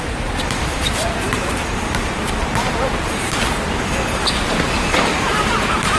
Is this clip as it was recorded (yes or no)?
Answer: no